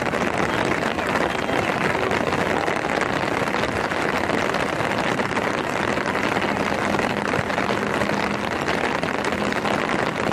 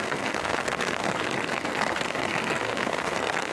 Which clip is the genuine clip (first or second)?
first